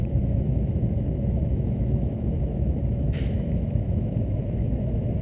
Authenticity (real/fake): fake